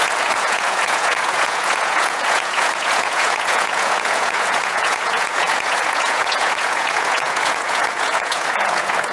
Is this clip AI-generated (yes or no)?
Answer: yes